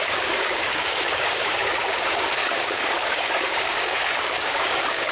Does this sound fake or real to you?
fake